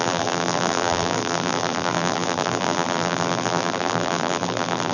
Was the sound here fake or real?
fake